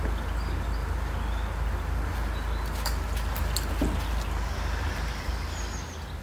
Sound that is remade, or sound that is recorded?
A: recorded